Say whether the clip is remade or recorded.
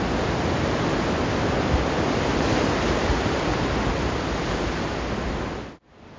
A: recorded